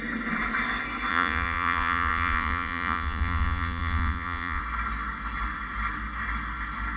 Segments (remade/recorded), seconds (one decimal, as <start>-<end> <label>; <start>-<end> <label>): 0.0-1.1 recorded; 1.1-4.6 remade; 4.6-7.0 recorded